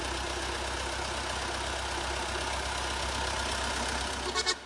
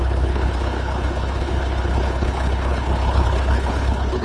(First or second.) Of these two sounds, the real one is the first